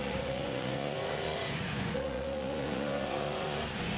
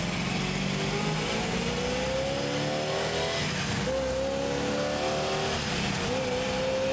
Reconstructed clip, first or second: first